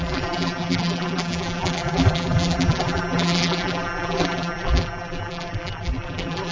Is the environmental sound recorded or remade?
remade